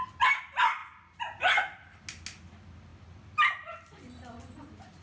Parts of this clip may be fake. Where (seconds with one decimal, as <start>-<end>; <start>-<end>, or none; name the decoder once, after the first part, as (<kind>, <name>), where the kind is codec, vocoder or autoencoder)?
none